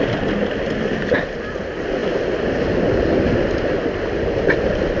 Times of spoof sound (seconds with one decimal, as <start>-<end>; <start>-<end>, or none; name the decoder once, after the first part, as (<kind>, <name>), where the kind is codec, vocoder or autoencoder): none